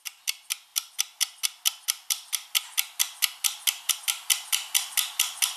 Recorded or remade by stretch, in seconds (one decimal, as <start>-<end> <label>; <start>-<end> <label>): 0.0-5.6 recorded